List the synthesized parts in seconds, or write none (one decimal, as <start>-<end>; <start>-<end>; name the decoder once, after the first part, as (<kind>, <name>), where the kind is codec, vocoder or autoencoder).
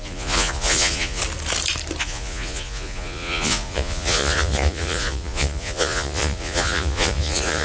0.0-1.2 (vocoder, Vocos); 2.0-7.6